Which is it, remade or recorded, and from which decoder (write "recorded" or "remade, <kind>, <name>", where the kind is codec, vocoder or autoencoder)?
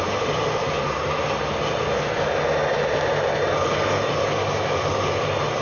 recorded